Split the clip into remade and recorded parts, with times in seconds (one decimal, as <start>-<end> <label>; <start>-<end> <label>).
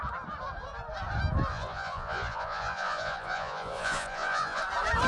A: 0.0-1.5 recorded; 1.5-4.6 remade; 4.6-5.1 recorded